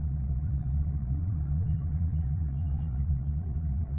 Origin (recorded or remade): remade